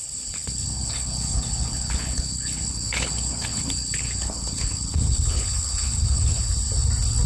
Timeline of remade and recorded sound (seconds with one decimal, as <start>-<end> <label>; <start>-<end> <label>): 0.0-6.4 remade; 6.4-7.3 recorded